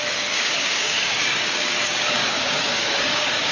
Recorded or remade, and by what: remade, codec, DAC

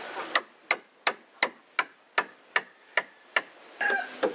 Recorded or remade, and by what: recorded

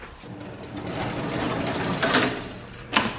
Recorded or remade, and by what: recorded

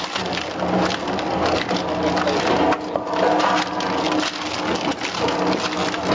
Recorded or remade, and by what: recorded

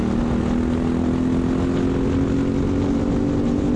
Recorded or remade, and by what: recorded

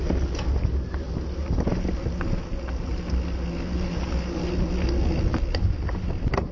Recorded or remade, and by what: recorded